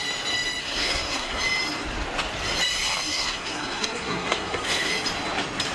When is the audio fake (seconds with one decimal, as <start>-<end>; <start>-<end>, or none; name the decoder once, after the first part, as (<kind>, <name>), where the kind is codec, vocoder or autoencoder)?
0.6-1.4 (codec, SNAC); 3.1-4.9